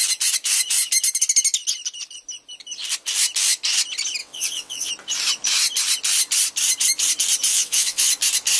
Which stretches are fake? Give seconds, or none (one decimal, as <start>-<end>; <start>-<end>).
4.2-4.9; 7.5-8.1